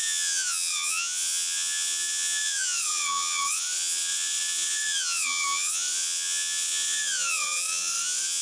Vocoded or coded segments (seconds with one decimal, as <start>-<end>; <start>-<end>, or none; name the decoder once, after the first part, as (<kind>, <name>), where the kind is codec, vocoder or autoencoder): 0.0-8.4 (vocoder, WaveNeXt)